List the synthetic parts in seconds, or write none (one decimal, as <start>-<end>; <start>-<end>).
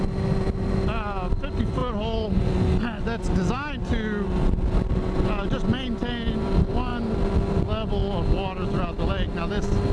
none